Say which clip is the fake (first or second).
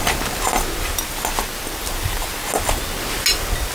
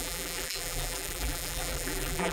second